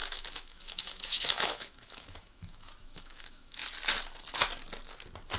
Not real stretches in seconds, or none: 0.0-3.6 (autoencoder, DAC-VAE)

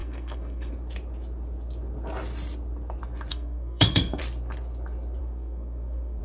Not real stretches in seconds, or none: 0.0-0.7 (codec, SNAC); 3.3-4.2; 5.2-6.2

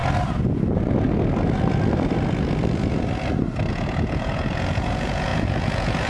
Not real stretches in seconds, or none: 3.7-6.1 (vocoder, Vocos)

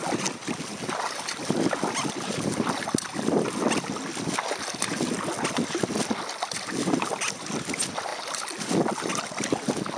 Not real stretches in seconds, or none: none